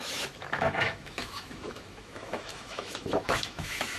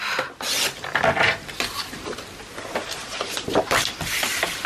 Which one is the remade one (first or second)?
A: first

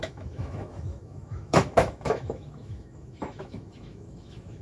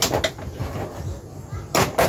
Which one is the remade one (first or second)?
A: first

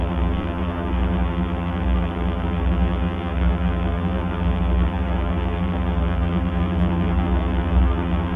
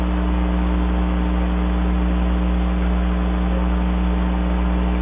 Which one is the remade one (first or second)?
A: first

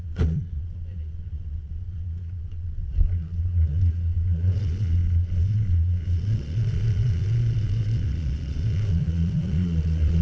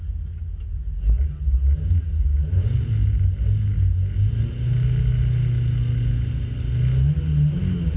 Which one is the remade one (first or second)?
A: first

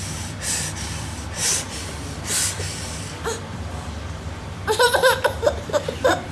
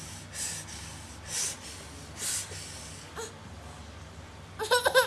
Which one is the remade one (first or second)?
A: first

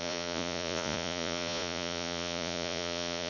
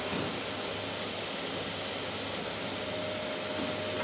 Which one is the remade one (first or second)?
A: first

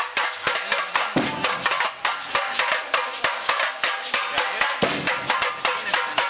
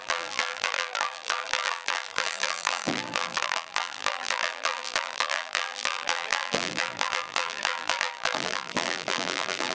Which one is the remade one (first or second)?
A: second